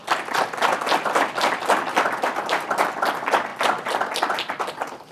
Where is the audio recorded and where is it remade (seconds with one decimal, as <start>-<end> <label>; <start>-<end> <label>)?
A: 0.0-5.1 recorded